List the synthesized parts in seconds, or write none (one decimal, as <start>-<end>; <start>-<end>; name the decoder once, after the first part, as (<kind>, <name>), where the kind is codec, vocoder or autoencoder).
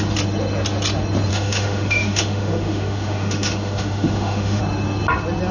1.3-4.6 (autoencoder, DAC-VAE)